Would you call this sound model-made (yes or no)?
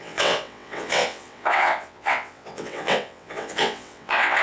yes